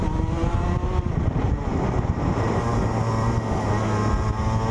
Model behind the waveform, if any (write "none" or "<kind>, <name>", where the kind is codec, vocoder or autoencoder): none